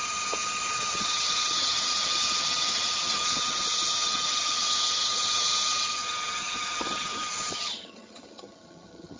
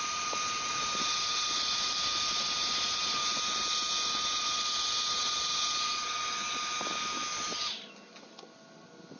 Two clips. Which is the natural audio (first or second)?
second